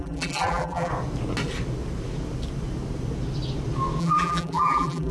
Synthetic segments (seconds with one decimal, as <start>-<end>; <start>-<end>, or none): 0.0-0.9; 4.0-5.1